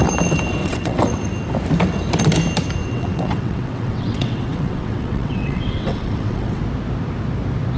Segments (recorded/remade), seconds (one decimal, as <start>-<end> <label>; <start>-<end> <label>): 0.0-0.6 recorded; 0.6-1.3 remade; 1.3-2.8 recorded; 2.8-6.6 remade; 6.6-7.8 recorded

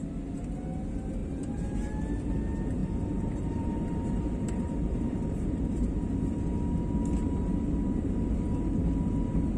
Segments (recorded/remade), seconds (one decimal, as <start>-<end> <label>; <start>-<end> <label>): 0.0-1.2 recorded; 1.2-2.0 remade; 2.0-2.8 recorded; 2.8-6.1 remade; 6.1-9.6 recorded

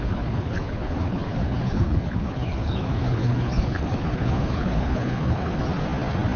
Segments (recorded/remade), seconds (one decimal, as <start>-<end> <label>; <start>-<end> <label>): 0.0-5.6 remade; 5.6-6.4 recorded

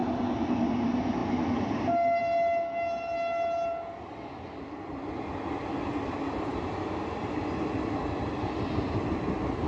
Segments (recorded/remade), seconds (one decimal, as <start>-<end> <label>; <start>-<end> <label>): 0.0-9.7 recorded

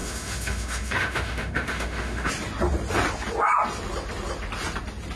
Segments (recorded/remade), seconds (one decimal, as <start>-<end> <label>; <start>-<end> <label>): 0.0-2.3 remade; 2.3-5.2 recorded

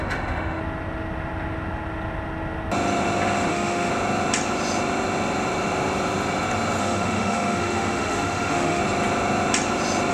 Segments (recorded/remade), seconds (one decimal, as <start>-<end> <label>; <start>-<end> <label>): 0.0-0.6 remade; 0.6-3.5 recorded; 3.5-3.9 remade; 3.9-6.8 recorded; 6.8-8.8 remade; 8.8-10.1 recorded

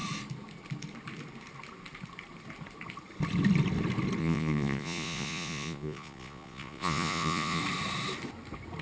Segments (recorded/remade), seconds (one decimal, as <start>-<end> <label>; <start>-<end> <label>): 0.0-4.2 recorded; 4.2-7.6 remade; 7.6-8.8 recorded

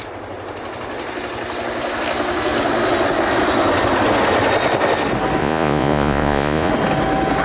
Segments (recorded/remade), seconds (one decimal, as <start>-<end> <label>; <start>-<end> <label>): 0.0-5.4 recorded; 5.4-6.7 remade; 6.7-7.4 recorded